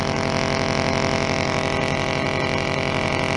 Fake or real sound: real